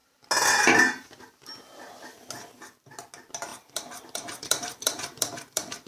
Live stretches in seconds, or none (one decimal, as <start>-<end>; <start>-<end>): 0.0-3.5